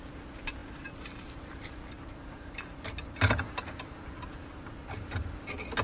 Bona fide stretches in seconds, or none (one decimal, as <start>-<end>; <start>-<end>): 0.0-5.8